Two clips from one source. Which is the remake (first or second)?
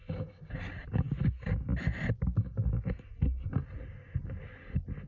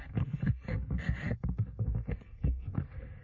second